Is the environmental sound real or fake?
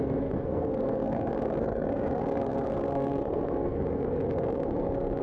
fake